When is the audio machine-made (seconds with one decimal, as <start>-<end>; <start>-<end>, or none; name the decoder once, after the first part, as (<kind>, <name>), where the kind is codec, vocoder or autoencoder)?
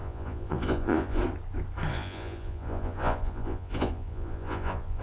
0.0-1.2 (vocoder, Vocos); 1.9-5.0